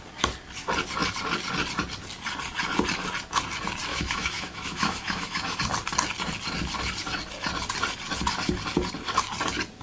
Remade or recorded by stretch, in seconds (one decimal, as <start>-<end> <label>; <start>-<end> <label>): 0.0-3.9 recorded; 3.9-5.6 remade; 5.6-9.8 recorded